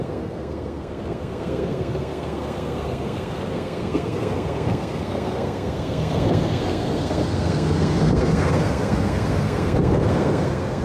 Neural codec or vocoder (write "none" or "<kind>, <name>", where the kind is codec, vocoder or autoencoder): codec, SNAC